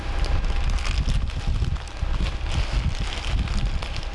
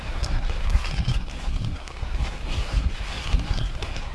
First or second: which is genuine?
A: first